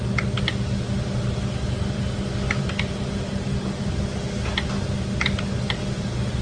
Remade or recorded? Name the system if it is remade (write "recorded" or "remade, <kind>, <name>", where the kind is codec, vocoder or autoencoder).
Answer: recorded